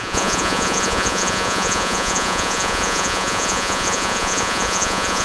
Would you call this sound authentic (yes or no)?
no